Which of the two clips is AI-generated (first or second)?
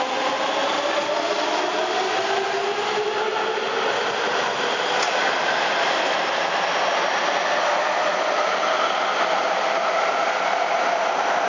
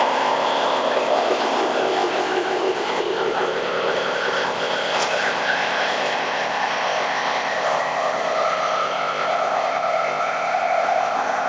second